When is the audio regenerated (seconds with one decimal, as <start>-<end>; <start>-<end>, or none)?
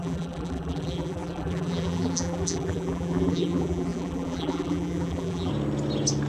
0.0-5.5